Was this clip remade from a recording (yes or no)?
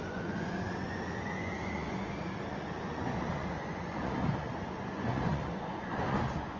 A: yes